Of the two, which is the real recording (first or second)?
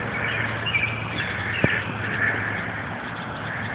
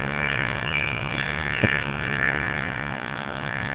first